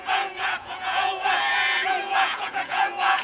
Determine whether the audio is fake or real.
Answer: fake